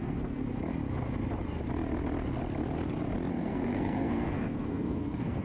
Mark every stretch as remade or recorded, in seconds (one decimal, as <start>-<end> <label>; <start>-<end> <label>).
0.0-0.4 remade; 0.4-3.3 recorded; 3.3-5.4 remade